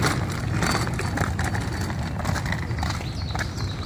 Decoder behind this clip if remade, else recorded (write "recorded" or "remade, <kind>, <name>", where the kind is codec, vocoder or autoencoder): recorded